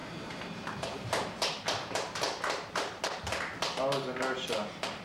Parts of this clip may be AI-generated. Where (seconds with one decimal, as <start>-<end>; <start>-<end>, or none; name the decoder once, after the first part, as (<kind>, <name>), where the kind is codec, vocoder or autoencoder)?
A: 0.0-3.0 (vocoder, BigVGAN v2)